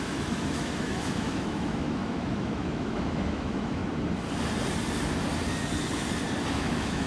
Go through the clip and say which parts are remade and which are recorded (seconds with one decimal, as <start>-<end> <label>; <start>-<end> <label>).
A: 0.0-3.8 remade; 3.8-6.5 recorded; 6.5-7.1 remade